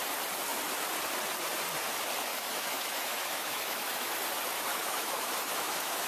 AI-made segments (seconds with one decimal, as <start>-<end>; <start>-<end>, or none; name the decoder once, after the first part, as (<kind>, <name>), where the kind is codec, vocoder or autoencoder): 2.3-4.2 (autoencoder, DAC-VAE); 4.7-6.1